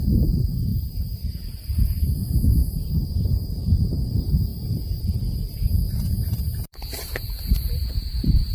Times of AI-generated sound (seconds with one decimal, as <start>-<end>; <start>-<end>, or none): 0.0-8.5